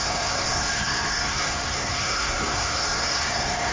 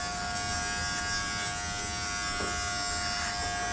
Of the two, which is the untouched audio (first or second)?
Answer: second